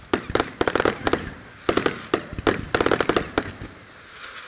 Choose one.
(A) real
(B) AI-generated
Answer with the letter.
A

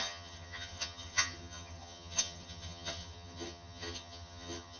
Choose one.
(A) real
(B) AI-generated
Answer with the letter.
B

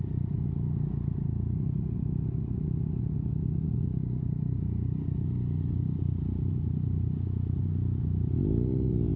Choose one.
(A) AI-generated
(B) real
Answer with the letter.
B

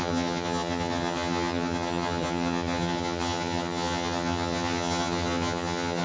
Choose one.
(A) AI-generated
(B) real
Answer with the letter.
A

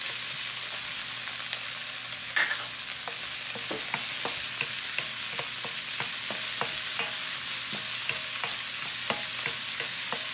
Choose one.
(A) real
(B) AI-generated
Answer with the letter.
A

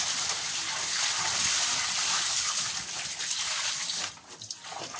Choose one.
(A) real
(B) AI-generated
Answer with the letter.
A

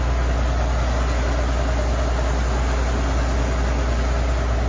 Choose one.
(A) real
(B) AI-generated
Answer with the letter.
A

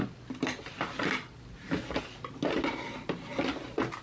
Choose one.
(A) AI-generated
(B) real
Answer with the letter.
B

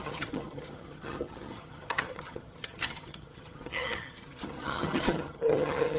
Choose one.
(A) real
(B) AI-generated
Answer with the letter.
B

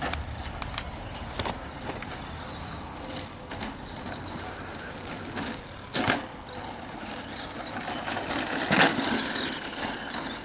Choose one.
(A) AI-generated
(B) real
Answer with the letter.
B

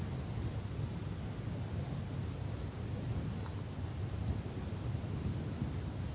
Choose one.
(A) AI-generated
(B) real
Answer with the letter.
B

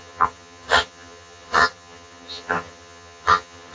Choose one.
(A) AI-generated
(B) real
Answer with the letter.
A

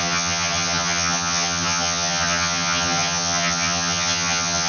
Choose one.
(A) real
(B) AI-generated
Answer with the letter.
B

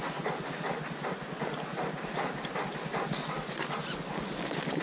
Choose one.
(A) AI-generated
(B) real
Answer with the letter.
B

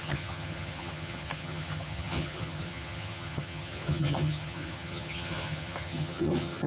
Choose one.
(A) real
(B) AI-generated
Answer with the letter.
B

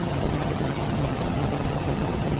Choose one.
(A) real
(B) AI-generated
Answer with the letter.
B